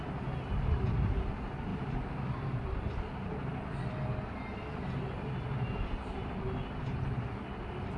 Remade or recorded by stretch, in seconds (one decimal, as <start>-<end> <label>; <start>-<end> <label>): 0.0-8.0 recorded